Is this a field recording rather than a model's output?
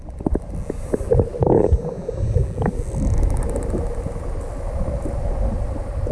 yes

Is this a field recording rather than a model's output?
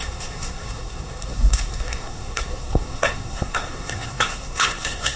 no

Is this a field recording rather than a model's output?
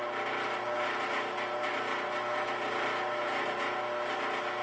yes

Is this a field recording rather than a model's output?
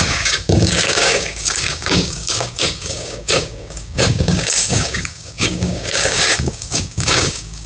no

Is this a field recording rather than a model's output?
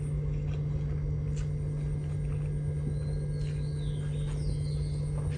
yes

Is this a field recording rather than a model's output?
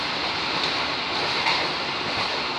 yes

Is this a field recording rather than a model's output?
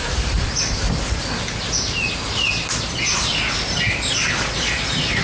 yes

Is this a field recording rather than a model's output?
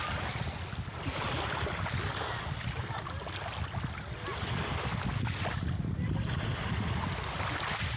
yes